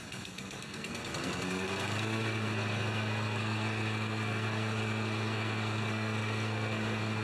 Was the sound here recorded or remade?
remade